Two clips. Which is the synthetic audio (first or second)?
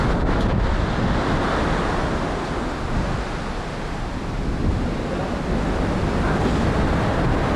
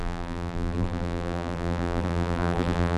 second